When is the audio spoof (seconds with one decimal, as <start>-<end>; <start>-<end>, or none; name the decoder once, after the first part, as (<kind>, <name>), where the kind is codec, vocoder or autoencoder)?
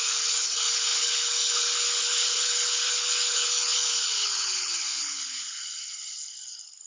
0.0-6.9 (codec, HILCodec)